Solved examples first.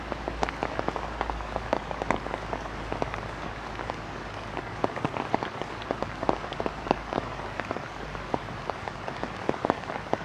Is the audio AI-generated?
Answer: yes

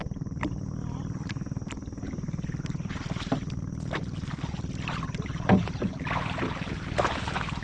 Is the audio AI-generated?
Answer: no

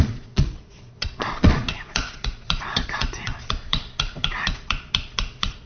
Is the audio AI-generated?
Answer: yes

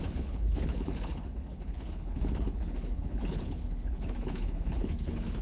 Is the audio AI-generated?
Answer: yes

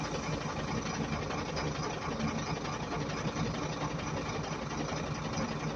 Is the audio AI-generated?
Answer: no